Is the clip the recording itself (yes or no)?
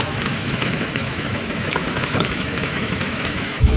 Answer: no